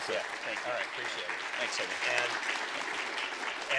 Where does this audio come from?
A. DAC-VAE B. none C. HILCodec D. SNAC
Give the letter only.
B